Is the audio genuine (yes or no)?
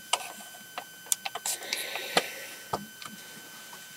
yes